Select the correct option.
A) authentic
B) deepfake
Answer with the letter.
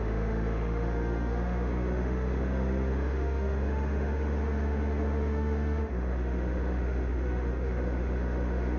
B